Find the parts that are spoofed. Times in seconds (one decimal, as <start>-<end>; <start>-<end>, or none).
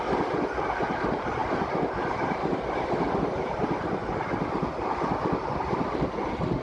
none